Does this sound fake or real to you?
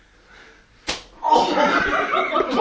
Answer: real